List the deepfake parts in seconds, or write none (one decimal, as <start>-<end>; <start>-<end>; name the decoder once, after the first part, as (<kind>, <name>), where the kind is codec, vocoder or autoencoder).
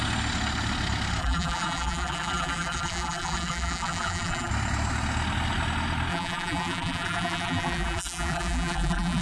1.2-4.5 (vocoder, BigVGAN v2); 6.1-9.2